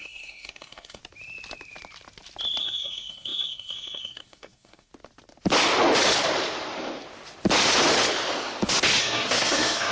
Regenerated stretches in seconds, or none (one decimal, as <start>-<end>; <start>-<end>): 0.0-1.0; 2.6-4.9; 9.0-9.9